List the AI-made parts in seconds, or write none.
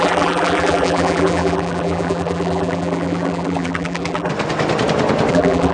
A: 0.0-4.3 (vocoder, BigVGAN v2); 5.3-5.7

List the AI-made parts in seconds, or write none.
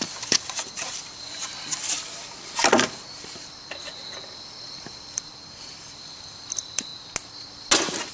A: 0.0-6.9 (vocoder, BigVGAN v2)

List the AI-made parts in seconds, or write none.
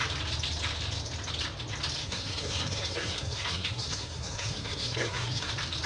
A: 2.0-5.5 (codec, SNAC)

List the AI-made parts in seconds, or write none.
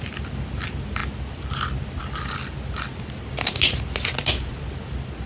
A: none